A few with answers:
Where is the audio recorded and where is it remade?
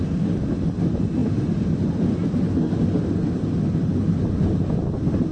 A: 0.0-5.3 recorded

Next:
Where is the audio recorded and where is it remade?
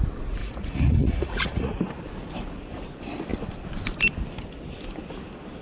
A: 0.0-0.4 recorded; 0.4-1.8 remade; 1.8-5.6 recorded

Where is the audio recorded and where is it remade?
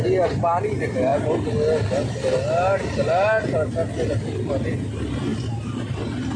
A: 0.0-6.4 recorded